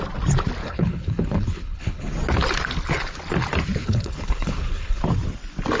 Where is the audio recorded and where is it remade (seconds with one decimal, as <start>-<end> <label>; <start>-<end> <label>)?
0.0-0.6 recorded; 0.6-2.1 remade; 2.1-3.8 recorded; 3.8-5.0 remade; 5.0-5.8 recorded